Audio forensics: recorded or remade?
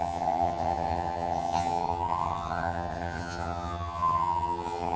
remade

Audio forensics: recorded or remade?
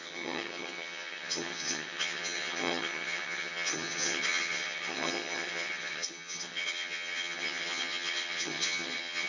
remade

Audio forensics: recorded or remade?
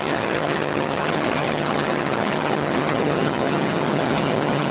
remade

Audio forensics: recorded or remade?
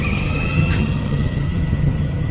remade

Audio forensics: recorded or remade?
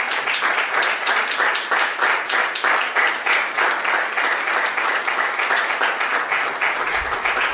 recorded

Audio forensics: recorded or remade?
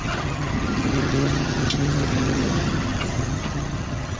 remade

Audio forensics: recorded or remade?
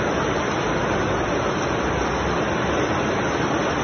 recorded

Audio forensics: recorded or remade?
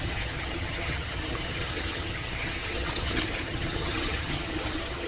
remade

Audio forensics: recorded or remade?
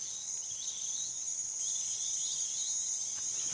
recorded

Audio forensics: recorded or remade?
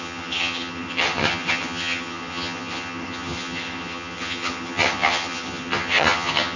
remade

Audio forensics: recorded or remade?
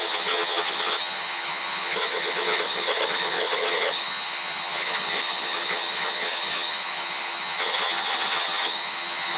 remade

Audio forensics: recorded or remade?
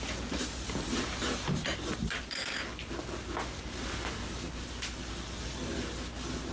recorded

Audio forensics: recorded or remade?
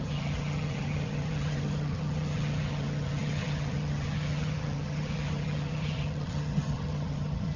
remade